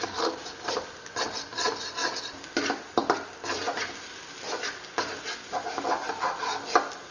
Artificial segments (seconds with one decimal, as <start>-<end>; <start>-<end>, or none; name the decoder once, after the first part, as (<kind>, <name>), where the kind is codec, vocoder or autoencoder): none

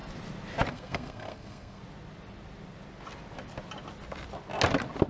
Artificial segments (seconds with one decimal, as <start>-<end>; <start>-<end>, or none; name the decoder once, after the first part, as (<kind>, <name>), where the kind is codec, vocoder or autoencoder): 0.7-1.8 (codec, SNAC)

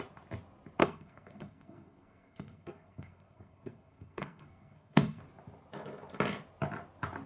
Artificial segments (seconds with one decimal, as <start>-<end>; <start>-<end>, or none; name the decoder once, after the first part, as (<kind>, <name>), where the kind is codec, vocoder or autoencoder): 0.8-5.2 (codec, SNAC)